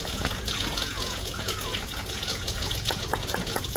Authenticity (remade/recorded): remade